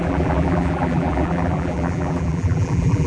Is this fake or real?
fake